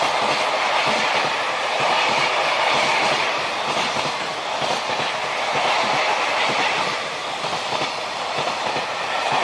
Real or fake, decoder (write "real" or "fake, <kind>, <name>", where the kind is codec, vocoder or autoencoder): real